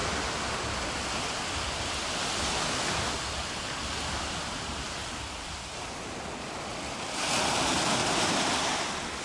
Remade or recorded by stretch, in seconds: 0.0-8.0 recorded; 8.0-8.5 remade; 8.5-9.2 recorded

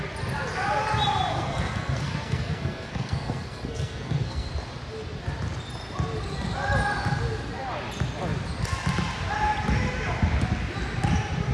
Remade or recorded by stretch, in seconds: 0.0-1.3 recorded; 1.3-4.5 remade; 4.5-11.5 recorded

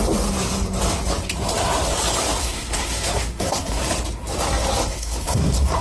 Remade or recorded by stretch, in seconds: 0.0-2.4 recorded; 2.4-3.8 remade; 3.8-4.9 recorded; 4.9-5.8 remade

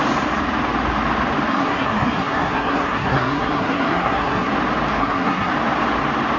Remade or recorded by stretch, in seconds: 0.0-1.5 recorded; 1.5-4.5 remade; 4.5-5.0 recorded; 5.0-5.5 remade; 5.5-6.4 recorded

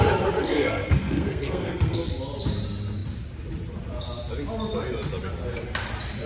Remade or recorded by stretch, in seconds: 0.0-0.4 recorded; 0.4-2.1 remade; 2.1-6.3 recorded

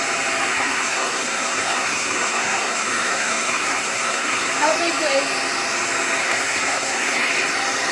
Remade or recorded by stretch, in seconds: 0.0-0.5 recorded; 0.5-4.5 remade; 4.5-6.2 recorded; 6.2-7.3 remade; 7.3-7.9 recorded

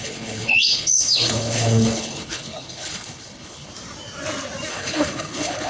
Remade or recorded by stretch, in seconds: 0.0-3.7 remade; 3.7-4.7 recorded; 4.7-5.7 remade

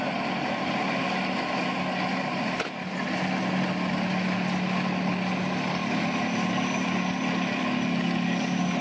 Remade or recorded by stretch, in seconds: 0.0-8.8 recorded